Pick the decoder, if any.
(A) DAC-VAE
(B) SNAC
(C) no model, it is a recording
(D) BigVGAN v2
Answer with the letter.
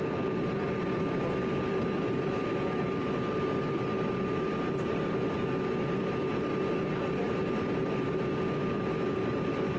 D